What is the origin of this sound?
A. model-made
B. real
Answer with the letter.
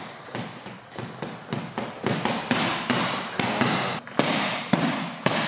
B